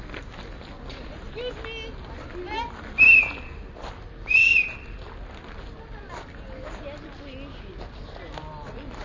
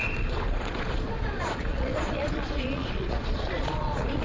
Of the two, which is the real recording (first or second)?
first